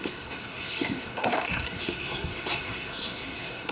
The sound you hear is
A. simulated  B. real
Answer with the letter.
A